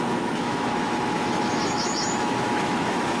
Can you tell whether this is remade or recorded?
remade